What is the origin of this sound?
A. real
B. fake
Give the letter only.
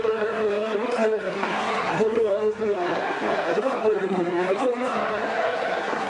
B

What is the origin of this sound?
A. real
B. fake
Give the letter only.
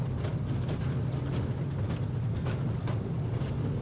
A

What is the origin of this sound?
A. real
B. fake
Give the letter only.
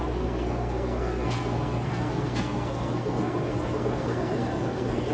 B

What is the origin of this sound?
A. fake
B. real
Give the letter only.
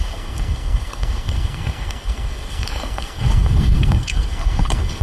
A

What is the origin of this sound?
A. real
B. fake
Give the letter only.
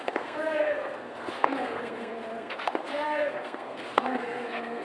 B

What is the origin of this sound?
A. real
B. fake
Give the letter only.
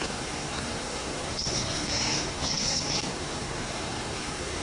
B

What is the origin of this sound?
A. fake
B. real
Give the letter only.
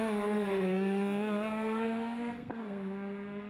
A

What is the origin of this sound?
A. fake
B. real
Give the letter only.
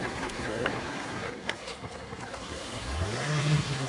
A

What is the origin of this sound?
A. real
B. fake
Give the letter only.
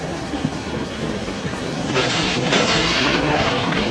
B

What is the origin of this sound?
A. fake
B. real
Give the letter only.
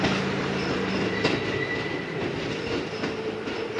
B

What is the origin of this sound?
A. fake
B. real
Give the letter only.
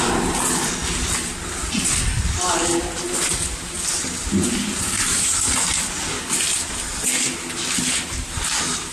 B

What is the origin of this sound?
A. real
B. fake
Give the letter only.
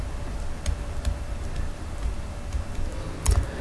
A